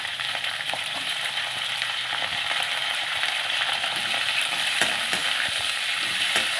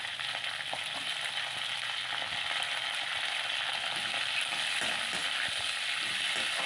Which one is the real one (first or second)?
second